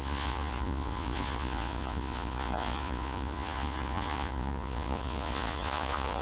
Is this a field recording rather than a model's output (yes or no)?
no